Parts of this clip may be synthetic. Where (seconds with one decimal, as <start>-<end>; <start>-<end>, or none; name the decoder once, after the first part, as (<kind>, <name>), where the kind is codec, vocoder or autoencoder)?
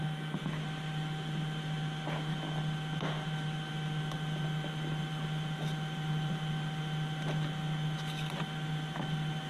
none